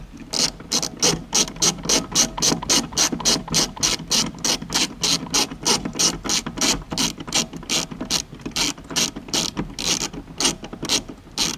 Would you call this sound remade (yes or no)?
no